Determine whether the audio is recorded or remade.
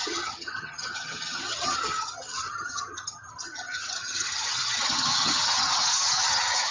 remade